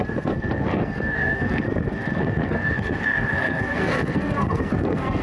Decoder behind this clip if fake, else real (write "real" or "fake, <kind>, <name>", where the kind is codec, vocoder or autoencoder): fake, codec, SNAC